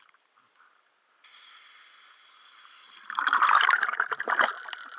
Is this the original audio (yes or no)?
no